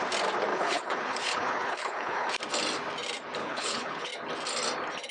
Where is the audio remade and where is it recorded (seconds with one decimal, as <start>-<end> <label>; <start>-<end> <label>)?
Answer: 0.0-0.5 recorded; 0.5-2.3 remade; 2.3-3.4 recorded; 3.4-4.1 remade; 4.1-5.1 recorded